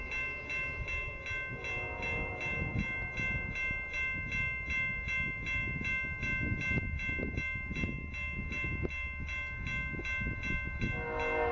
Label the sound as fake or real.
real